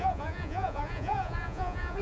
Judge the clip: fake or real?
fake